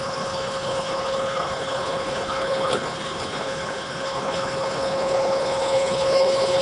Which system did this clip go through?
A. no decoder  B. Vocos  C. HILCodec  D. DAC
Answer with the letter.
C